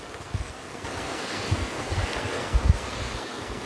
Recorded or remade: remade